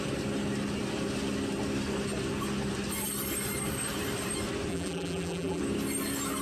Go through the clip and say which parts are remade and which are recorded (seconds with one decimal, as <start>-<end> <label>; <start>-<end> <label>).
0.0-4.7 recorded; 4.7-5.6 remade; 5.6-6.4 recorded